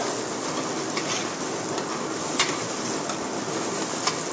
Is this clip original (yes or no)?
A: yes